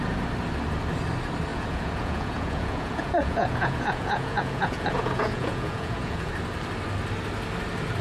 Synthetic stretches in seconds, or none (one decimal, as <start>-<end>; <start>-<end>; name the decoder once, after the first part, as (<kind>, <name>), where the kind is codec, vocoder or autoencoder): 1.5-6.3 (vocoder, Vocos)